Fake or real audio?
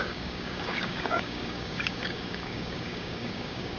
fake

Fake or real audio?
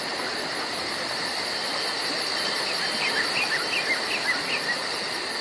real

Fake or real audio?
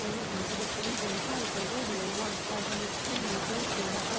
fake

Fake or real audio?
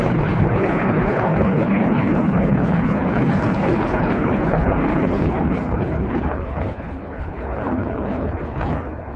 fake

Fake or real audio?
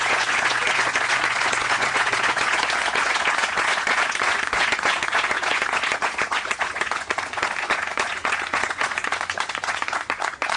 fake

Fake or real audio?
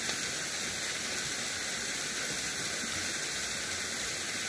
real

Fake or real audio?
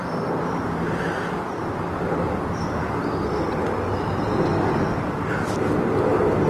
real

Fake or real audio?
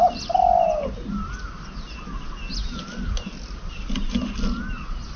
real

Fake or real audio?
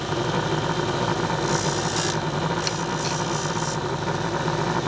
real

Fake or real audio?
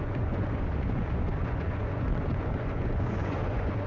fake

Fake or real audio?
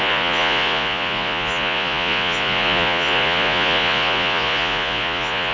fake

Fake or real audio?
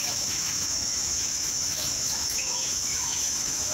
fake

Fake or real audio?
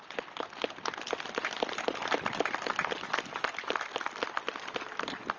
real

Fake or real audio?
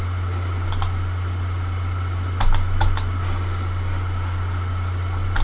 real